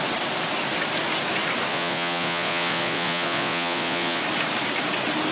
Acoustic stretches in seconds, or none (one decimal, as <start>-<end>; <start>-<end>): 0.0-1.7; 4.2-5.3

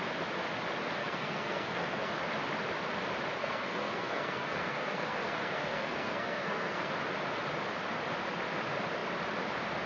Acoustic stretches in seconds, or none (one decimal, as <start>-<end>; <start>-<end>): 0.0-1.0; 2.1-3.4; 6.9-9.9